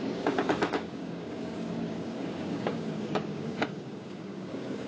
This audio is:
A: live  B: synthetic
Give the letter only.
B